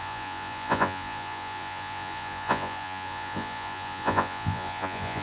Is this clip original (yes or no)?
no